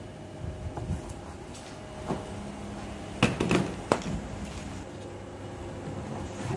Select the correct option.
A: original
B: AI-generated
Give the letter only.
A